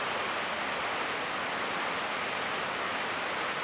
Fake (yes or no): no